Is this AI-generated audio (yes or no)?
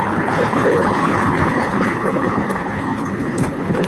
yes